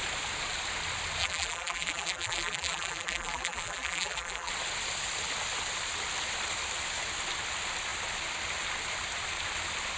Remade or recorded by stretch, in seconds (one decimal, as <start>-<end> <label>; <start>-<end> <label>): 0.0-1.2 recorded; 1.2-4.5 remade; 4.5-10.0 recorded